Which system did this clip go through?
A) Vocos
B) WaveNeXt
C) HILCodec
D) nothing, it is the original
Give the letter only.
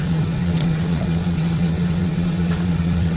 B